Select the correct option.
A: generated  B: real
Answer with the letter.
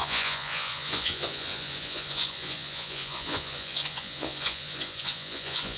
A